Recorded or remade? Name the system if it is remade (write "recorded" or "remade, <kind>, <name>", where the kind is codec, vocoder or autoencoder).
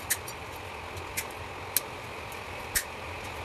recorded